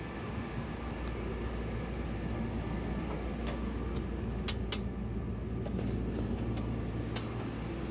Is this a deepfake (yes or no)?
no